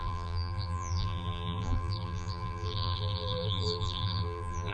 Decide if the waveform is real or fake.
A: fake